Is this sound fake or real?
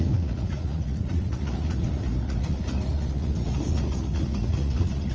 fake